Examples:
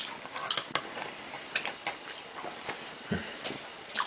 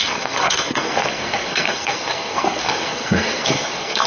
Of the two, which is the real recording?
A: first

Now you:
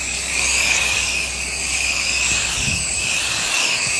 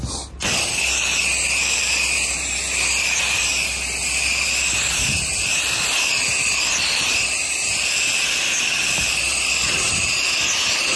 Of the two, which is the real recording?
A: second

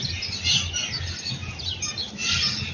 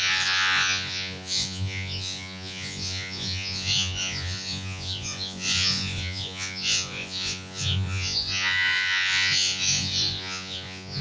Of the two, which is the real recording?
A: first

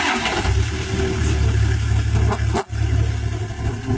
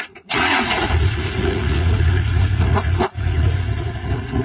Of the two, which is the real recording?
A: first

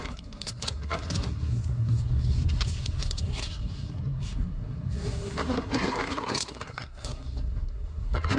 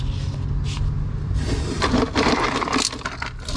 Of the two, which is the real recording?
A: second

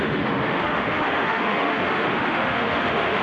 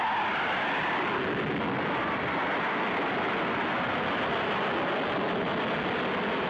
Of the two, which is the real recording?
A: second